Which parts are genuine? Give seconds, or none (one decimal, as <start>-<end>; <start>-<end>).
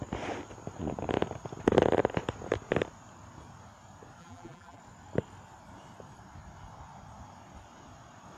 0.0-4.2; 4.8-8.4